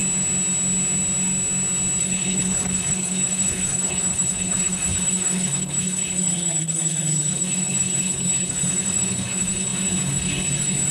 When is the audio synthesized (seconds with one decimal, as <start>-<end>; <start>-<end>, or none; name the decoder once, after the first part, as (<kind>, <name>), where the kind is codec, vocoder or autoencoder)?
2.0-10.9 (codec, HILCodec)